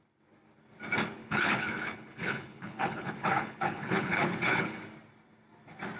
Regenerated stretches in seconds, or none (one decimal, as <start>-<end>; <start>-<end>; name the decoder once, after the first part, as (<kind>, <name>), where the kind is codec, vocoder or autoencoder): 1.2-4.8 (codec, HILCodec)